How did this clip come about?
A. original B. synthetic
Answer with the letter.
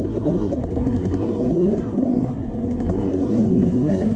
B